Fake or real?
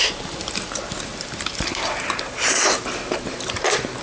fake